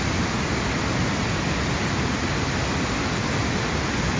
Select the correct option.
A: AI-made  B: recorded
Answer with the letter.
B